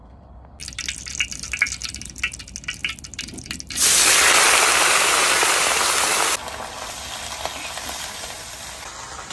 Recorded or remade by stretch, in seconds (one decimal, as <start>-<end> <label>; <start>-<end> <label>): 0.0-9.3 recorded